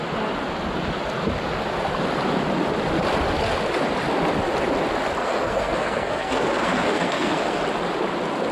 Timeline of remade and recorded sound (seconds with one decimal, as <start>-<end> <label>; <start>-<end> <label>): 0.0-5.2 recorded; 5.2-7.6 remade; 7.6-8.5 recorded